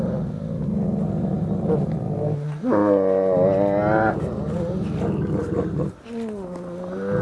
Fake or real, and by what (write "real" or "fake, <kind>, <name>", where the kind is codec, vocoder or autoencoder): real